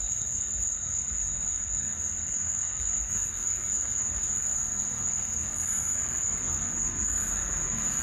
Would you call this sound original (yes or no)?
no